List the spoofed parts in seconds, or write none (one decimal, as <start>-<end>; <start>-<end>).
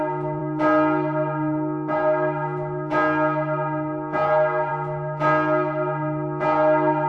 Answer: none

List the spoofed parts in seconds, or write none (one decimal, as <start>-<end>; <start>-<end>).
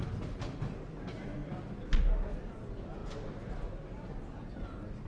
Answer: none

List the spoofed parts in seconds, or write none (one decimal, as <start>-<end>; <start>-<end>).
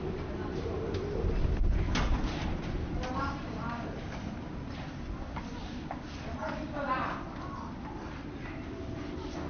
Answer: none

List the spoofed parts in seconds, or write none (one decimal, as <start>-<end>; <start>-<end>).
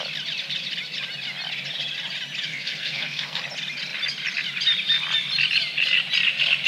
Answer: 2.5-3.4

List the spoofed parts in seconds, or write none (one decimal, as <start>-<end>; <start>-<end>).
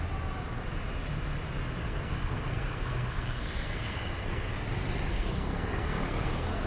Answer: 1.8-4.5; 5.1-6.7